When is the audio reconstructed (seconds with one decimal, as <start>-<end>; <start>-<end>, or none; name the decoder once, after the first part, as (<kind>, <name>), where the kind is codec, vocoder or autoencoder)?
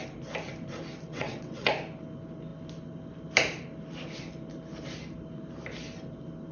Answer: 1.1-1.7 (vocoder, WaveNeXt)